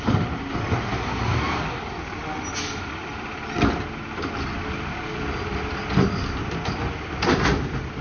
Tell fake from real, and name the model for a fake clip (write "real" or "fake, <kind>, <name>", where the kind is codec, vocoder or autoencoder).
real